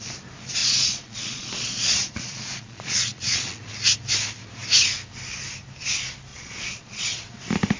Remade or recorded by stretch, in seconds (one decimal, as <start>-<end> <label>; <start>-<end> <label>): 0.0-0.6 recorded; 0.6-3.6 remade; 3.6-6.3 recorded; 6.3-7.2 remade; 7.2-7.8 recorded